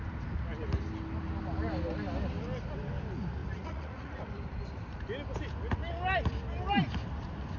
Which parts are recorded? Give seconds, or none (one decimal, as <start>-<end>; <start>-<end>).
0.0-3.4; 4.2-7.6